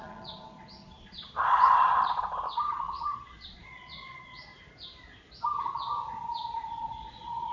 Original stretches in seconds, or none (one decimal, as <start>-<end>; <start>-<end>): 4.5-6.8